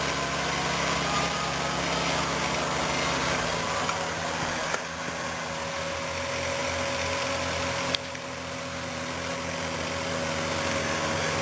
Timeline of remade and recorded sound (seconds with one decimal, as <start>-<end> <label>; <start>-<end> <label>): 0.0-6.6 recorded; 6.6-7.3 remade; 7.3-11.4 recorded